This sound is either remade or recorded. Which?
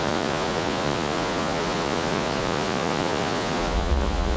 remade